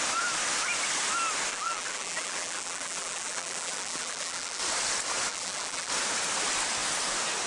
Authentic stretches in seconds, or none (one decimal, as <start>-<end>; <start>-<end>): 0.0-1.5; 4.6-5.3; 5.9-7.5